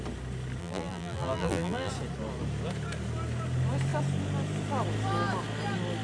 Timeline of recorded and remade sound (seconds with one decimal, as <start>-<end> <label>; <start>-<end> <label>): 0.0-0.6 recorded; 0.6-1.9 remade; 1.9-6.0 recorded